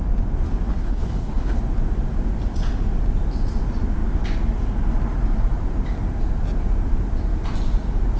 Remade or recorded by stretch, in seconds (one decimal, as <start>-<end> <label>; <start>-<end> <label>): 0.0-0.7 recorded; 0.7-1.6 remade; 1.6-8.2 recorded